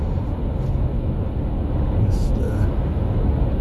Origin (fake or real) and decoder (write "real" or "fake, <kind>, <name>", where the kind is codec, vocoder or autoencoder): real